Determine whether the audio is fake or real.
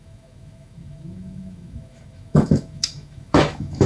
fake